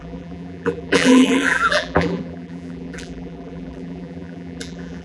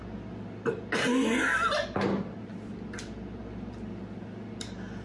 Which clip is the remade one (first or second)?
first